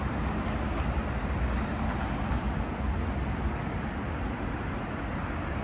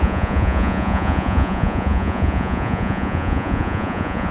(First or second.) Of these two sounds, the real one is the first